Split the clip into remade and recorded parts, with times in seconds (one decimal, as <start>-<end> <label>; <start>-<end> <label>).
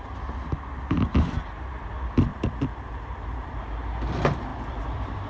0.0-2.3 recorded; 2.3-3.6 remade; 3.6-4.5 recorded; 4.5-5.3 remade